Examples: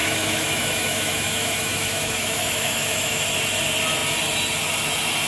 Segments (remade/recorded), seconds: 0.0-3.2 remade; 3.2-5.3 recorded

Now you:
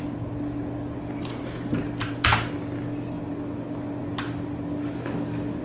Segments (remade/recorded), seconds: 0.0-5.6 recorded

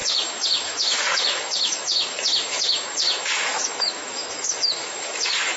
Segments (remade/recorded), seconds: 0.0-5.6 remade

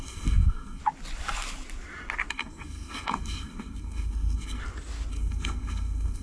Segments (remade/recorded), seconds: 0.0-0.8 remade; 0.8-2.3 recorded; 2.3-4.6 remade; 4.6-5.1 recorded; 5.1-6.2 remade

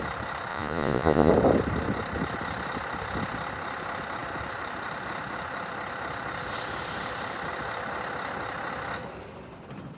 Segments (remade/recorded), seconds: 0.0-0.5 recorded; 0.5-1.3 remade; 1.3-10.0 recorded

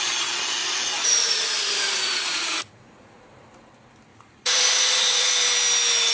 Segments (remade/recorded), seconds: 0.0-0.6 recorded; 0.6-3.2 remade; 3.2-4.1 recorded; 4.1-5.3 remade; 5.3-6.1 recorded

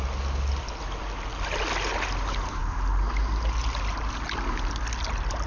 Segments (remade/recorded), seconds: 0.0-5.5 recorded

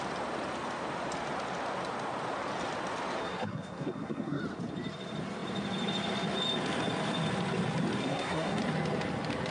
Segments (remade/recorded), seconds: 0.0-3.2 recorded; 3.2-4.4 remade; 4.4-8.0 recorded; 8.0-8.6 remade; 8.6-9.5 recorded